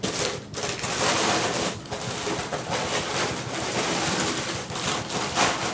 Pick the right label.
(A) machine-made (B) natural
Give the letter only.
B